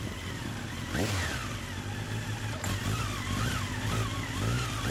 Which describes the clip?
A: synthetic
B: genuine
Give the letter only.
B